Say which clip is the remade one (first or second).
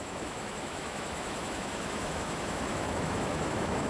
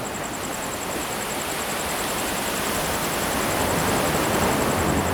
first